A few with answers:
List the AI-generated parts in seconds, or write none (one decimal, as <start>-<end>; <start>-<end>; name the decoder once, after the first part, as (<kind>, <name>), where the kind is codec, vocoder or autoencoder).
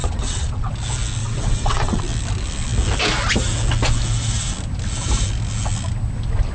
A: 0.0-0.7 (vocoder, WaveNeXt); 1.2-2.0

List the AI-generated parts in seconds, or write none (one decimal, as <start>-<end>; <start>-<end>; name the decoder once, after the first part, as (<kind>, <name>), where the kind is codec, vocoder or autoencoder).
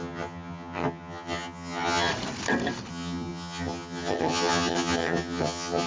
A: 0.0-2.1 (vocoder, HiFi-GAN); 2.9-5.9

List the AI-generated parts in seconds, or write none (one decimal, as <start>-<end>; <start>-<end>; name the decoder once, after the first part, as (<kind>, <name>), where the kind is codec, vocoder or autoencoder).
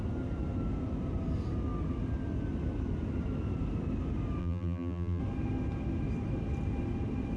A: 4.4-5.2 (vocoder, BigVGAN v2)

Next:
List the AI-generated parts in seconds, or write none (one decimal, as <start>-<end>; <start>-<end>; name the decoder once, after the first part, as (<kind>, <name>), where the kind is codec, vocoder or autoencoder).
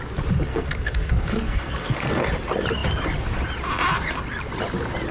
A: 0.5-2.3 (codec, SNAC)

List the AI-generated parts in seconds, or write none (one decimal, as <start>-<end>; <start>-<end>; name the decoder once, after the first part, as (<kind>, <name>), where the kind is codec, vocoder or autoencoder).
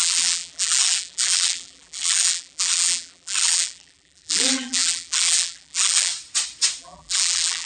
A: 0.0-6.1 (vocoder, BigVGAN v2); 6.8-7.7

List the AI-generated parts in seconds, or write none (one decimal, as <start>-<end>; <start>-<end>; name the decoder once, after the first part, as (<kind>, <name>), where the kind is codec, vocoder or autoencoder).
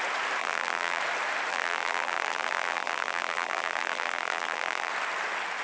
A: 0.4-1.0 (vocoder, BigVGAN v2); 1.5-4.9